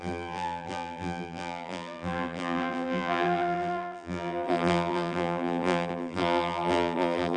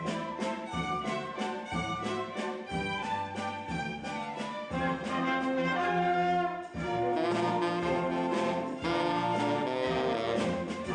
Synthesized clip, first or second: first